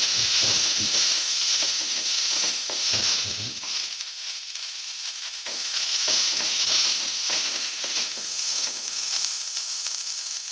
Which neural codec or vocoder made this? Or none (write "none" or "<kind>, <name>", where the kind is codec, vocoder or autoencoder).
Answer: autoencoder, DAC-VAE